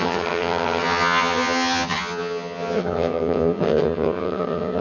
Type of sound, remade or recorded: remade